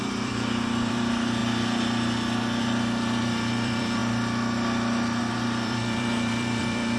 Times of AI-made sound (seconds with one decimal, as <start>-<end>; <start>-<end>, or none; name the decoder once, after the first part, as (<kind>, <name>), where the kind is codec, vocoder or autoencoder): 0.0-1.4 (vocoder, BigVGAN v2); 2.6-4.0; 5.2-7.0